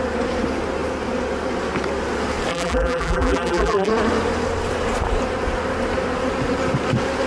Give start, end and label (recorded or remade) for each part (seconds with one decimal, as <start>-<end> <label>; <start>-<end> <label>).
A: 0.0-2.5 recorded; 2.5-3.9 remade; 3.9-7.3 recorded